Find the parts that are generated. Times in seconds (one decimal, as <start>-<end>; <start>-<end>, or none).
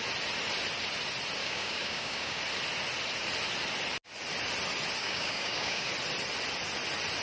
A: 1.4-2.4; 5.0-5.9